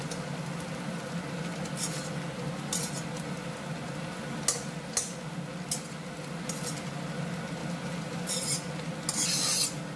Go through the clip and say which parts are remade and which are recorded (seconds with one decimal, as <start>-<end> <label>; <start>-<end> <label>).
0.0-10.0 recorded